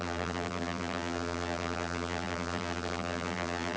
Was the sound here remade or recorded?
remade